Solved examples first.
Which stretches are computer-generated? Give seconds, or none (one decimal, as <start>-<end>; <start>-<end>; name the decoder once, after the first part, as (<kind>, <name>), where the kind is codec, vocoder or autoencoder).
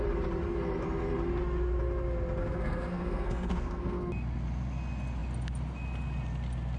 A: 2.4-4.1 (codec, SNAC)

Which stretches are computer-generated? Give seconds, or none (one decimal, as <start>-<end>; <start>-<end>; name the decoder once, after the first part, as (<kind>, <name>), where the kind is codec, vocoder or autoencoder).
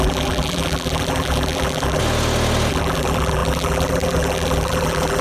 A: 0.0-2.0 (vocoder, BigVGAN v2); 2.7-5.2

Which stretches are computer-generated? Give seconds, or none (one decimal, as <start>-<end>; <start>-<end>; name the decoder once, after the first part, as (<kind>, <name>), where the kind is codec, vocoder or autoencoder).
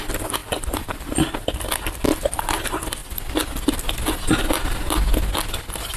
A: 0.4-2.2 (vocoder, BigVGAN v2)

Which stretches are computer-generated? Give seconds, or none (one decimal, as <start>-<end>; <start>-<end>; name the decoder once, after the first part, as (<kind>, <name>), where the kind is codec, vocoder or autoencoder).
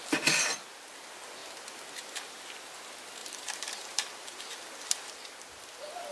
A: 3.2-5.1 (vocoder, BigVGAN v2)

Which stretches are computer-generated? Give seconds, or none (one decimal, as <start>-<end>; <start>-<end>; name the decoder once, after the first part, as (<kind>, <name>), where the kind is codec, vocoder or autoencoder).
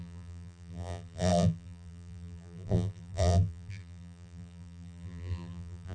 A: 0.0-5.9 (vocoder, BigVGAN v2)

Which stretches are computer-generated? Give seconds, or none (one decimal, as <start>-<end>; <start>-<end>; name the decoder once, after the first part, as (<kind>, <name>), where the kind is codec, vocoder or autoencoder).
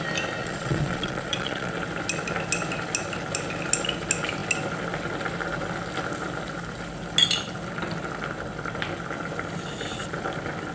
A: 0.4-1.7 (vocoder, Vocos)